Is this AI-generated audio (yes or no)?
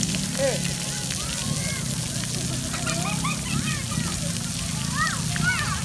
no